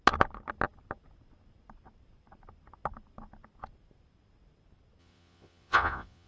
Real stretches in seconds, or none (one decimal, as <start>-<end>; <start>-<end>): 0.0-5.0

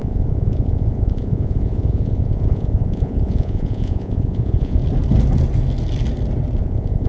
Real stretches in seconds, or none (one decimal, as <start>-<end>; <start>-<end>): 4.8-6.6

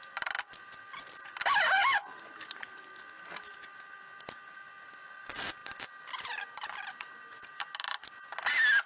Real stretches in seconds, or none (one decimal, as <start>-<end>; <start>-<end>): 0.0-8.9

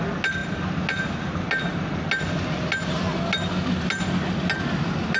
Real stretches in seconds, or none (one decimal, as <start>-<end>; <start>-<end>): 0.0-5.2

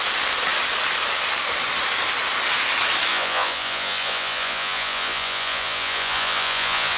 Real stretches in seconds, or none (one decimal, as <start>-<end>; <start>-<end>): 0.0-3.1

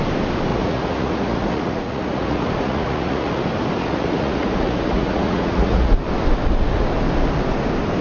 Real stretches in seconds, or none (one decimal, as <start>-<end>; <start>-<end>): 0.0-0.5; 3.4-3.8; 5.9-8.0

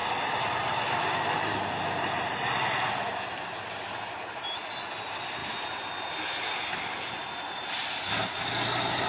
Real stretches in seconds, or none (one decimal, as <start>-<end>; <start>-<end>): 0.0-9.1